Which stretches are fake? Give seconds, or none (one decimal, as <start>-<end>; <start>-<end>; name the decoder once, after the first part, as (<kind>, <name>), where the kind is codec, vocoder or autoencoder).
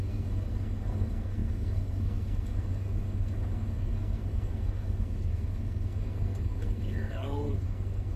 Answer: 0.0-8.2 (codec, SNAC)